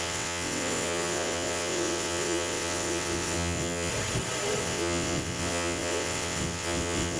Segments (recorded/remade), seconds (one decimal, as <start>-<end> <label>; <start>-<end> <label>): 0.0-3.9 remade; 3.9-4.6 recorded; 4.6-7.2 remade